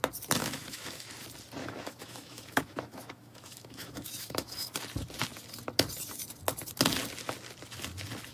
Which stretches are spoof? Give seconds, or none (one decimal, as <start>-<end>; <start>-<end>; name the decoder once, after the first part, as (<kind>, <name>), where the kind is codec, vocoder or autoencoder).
0.4-1.1 (autoencoder, DAC-VAE); 1.6-4.8